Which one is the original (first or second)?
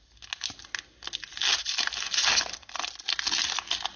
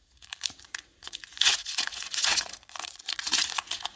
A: first